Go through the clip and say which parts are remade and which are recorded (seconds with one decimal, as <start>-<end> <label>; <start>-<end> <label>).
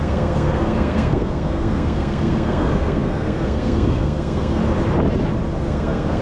0.0-4.6 remade; 4.6-5.6 recorded; 5.6-6.2 remade